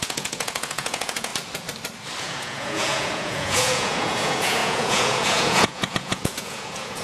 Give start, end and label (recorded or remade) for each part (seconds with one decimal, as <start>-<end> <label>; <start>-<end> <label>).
0.0-1.3 remade; 1.3-2.2 recorded; 2.2-7.0 remade